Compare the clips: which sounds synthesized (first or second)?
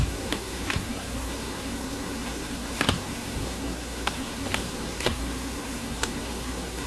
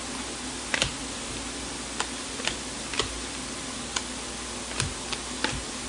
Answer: first